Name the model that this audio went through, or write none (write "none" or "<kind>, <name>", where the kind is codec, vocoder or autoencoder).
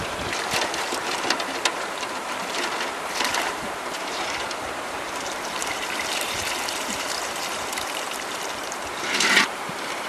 vocoder, BigVGAN v2